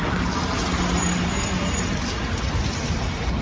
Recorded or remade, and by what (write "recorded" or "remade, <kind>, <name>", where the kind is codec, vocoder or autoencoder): recorded